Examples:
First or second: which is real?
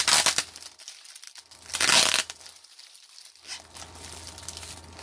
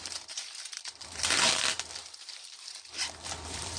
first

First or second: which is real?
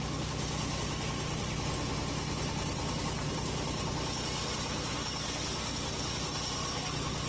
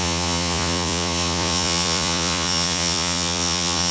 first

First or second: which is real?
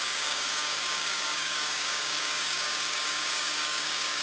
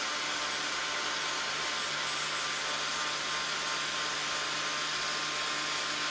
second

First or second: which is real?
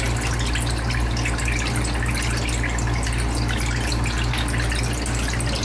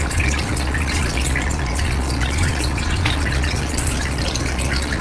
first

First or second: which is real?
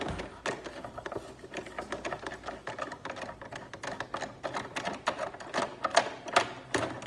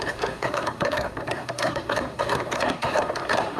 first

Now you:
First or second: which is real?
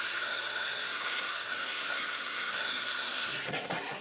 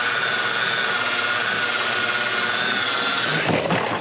second